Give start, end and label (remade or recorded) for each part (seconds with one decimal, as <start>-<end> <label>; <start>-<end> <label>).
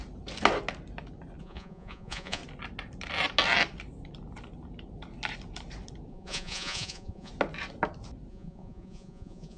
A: 0.0-1.4 recorded; 1.4-2.4 remade; 2.4-6.1 recorded; 6.1-7.3 remade; 7.3-8.3 recorded; 8.3-9.6 remade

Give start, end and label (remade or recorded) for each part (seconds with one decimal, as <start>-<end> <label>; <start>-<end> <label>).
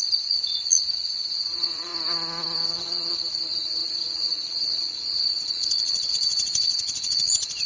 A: 0.0-1.9 remade; 1.9-2.7 recorded; 2.7-7.7 remade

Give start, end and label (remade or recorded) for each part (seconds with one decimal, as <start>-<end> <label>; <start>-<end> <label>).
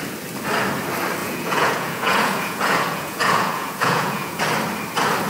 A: 0.0-1.2 recorded; 1.2-4.4 remade; 4.4-5.3 recorded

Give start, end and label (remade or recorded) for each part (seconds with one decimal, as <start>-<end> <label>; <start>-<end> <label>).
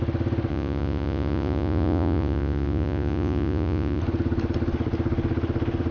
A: 0.0-0.5 recorded; 0.5-4.0 remade; 4.0-5.9 recorded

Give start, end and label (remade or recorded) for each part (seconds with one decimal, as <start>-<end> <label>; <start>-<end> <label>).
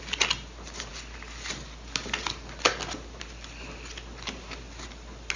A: 0.0-5.4 recorded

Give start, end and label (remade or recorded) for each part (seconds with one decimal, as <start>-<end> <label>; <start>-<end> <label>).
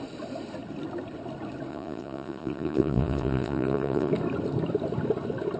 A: 0.0-1.7 recorded; 1.7-4.1 remade; 4.1-5.6 recorded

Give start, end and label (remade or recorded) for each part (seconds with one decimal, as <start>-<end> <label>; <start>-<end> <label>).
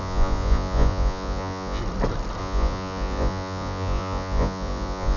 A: 0.0-1.8 remade; 1.8-2.4 recorded; 2.4-5.2 remade